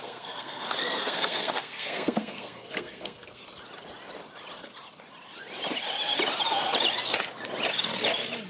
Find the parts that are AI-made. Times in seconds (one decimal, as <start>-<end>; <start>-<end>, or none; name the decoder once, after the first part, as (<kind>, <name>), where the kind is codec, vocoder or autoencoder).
0.0-3.4 (codec, SNAC)